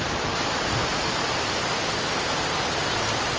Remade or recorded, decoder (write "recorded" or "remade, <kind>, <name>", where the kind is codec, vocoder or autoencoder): recorded